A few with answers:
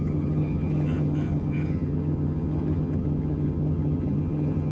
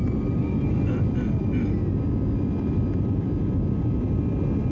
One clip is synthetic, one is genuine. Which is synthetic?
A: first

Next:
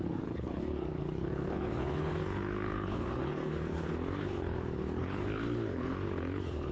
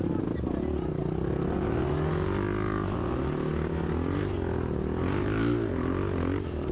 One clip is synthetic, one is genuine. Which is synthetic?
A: first